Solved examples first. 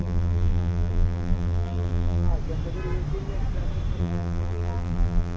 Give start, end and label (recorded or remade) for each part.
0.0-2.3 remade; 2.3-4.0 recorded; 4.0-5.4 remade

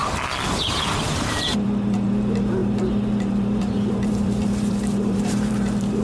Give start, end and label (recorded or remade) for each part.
0.0-0.5 recorded; 0.5-6.0 remade

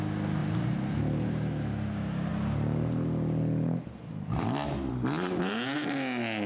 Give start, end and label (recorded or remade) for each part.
0.0-0.4 recorded; 0.4-1.5 remade; 1.5-6.5 recorded

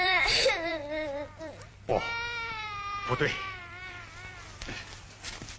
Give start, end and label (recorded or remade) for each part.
0.0-0.8 remade; 0.8-1.4 recorded; 1.4-1.9 remade; 1.9-2.5 recorded; 2.5-5.6 remade

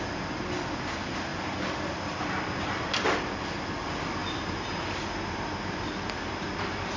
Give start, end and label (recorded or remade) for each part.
0.0-7.0 recorded